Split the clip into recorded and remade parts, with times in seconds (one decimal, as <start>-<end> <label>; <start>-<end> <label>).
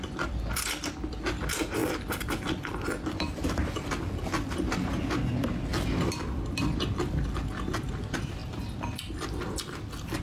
0.0-10.2 recorded